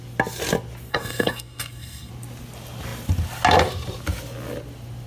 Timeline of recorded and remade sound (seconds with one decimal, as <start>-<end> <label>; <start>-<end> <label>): 0.0-0.9 recorded; 0.9-2.1 remade; 2.1-5.1 recorded